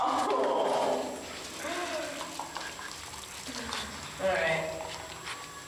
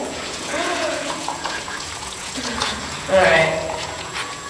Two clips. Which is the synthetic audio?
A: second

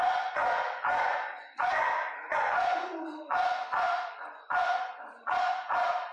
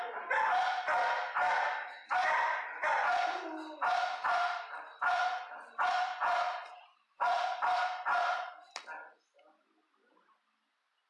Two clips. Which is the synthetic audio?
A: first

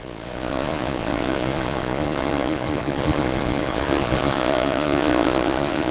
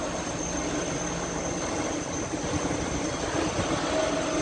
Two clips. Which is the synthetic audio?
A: first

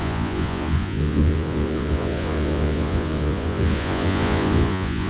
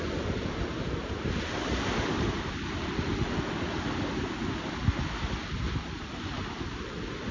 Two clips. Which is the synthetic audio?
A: first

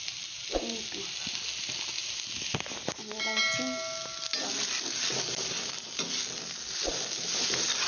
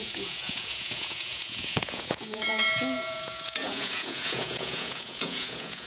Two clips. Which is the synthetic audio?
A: second